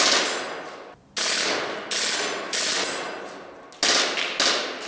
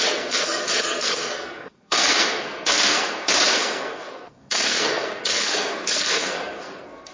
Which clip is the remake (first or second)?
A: second